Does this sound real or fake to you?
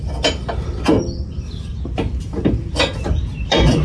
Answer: fake